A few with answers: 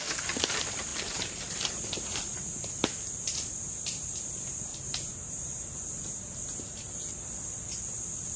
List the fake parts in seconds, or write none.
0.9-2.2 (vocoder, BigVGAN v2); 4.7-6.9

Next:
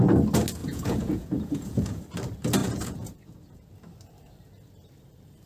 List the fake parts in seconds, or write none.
0.6-2.0 (vocoder, Vocos); 2.6-3.7

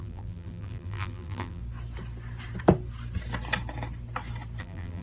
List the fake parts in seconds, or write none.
0.0-1.6 (vocoder, BigVGAN v2); 4.6-5.0

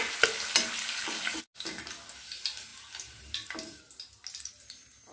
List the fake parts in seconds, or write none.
0.8-1.4 (codec, DAC)

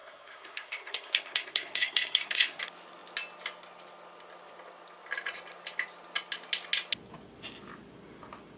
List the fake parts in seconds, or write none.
0.0-2.6 (codec, SNAC)

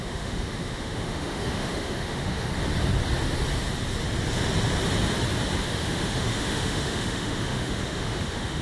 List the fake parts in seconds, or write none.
0.0-2.5 (autoencoder, DAC-VAE); 5.6-8.6